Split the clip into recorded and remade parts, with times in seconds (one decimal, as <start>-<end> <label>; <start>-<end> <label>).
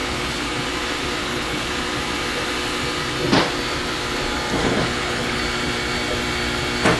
0.0-0.5 remade; 0.5-1.2 recorded; 1.2-1.7 remade; 1.7-4.6 recorded; 4.6-5.4 remade; 5.4-7.0 recorded